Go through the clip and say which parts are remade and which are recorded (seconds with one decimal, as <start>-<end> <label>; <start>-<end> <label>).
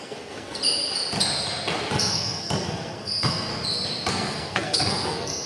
0.0-0.6 remade; 0.6-1.9 recorded; 1.9-3.5 remade; 3.5-4.1 recorded; 4.1-5.5 remade